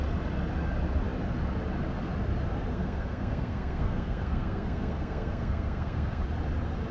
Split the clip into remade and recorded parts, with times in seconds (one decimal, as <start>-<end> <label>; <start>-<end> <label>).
0.0-2.7 recorded; 2.7-6.2 remade; 6.2-6.9 recorded